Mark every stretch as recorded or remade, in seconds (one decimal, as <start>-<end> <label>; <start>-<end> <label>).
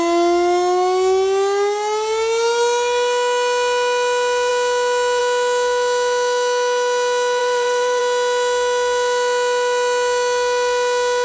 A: 0.0-7.4 recorded; 7.4-8.0 remade; 8.0-11.2 recorded